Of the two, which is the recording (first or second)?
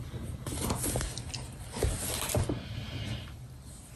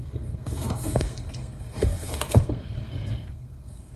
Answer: first